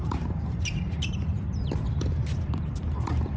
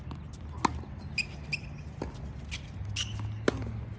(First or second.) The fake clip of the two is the first